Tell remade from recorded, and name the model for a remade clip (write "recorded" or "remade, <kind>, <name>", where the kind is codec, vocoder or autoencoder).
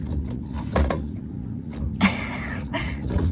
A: remade, vocoder, Vocos